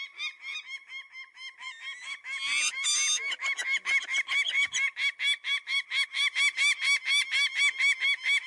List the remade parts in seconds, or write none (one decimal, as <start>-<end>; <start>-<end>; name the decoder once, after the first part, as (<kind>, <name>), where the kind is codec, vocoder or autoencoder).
none